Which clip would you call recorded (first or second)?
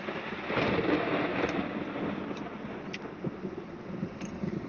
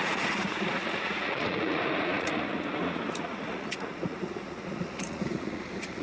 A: first